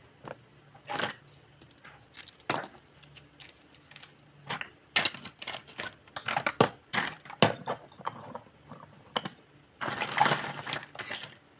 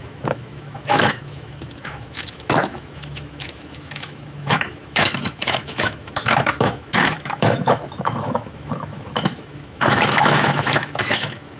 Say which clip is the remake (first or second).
second